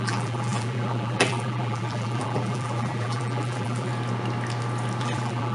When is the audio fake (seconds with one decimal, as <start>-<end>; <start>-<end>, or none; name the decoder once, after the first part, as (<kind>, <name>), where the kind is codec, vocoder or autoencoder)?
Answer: 0.0-3.9 (vocoder, BigVGAN v2); 5.0-5.5